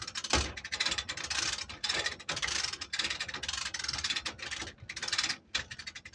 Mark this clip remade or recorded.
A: recorded